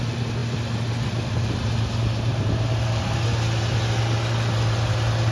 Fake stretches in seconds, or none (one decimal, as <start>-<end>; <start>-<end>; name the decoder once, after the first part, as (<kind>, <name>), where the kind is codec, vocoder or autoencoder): none

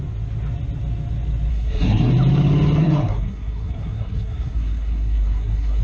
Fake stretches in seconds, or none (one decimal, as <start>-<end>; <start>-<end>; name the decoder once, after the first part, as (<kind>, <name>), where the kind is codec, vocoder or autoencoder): 1.5-2.1 (codec, SNAC); 2.8-5.8

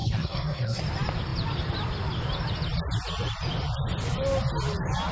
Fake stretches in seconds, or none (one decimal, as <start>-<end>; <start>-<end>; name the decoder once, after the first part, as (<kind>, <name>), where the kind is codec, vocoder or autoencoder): 0.0-0.8 (codec, SNAC)